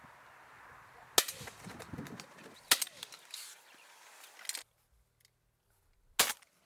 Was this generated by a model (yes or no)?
no